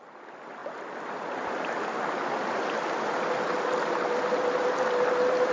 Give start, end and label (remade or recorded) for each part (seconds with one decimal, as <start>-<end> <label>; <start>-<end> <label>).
0.0-5.5 recorded